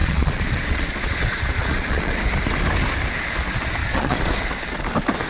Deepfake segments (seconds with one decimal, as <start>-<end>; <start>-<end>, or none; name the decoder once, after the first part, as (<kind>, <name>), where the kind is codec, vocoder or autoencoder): 0.0-2.2 (vocoder, Vocos); 3.8-4.3